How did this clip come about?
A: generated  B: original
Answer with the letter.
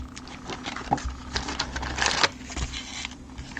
B